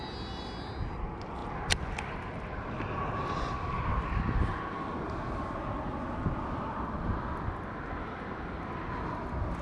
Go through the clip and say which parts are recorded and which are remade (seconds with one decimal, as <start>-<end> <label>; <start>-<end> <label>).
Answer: 0.0-9.6 recorded